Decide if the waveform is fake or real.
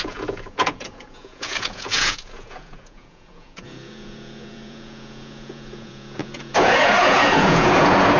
fake